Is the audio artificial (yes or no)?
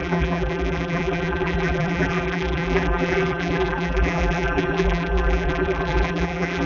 yes